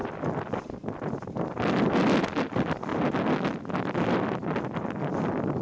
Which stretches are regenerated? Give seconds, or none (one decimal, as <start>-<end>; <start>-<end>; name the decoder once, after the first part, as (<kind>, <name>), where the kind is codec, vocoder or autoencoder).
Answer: none